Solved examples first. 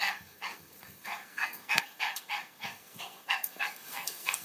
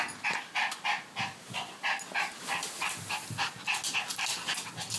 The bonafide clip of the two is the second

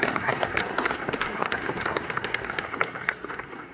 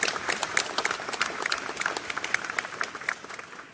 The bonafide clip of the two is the second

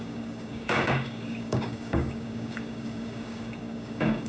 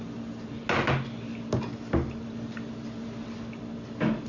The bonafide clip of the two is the second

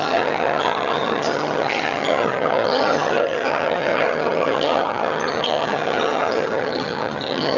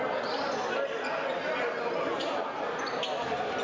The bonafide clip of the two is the second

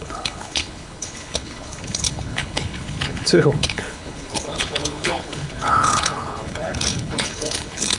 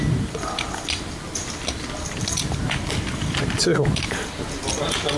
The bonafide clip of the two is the second